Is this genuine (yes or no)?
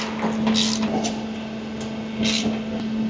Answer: yes